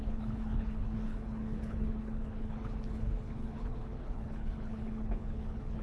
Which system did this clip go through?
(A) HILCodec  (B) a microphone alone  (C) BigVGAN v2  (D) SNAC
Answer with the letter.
A